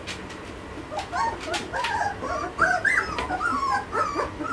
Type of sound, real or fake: real